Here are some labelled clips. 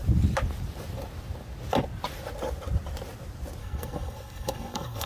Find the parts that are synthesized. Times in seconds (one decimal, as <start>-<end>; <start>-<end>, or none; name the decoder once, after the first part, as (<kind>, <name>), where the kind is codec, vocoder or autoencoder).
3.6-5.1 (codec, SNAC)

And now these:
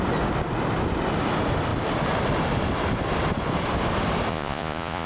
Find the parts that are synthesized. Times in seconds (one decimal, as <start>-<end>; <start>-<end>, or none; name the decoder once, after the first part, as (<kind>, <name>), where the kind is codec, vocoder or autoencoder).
4.3-5.1 (vocoder, Vocos)

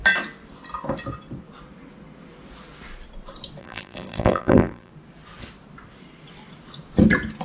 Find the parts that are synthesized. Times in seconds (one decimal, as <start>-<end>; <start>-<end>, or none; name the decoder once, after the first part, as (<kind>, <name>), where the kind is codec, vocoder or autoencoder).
3.6-4.9 (vocoder, BigVGAN v2)

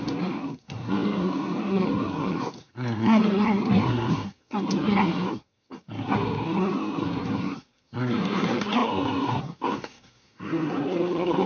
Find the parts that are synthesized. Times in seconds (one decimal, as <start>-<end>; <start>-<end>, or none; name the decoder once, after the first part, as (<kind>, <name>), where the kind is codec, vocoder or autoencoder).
0.0-11.5 (codec, SNAC)

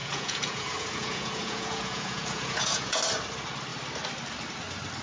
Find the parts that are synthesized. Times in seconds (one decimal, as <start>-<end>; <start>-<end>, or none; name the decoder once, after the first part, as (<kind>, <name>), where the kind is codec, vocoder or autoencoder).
0.0-3.0 (vocoder, Vocos)